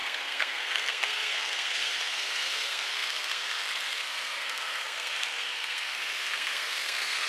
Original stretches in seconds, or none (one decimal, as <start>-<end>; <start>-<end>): none